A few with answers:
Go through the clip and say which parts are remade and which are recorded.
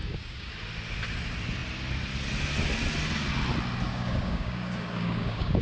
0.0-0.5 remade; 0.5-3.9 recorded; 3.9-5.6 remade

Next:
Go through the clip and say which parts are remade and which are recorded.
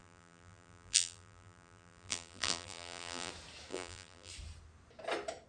0.0-3.3 remade; 3.3-3.7 recorded; 3.7-4.3 remade; 4.3-5.5 recorded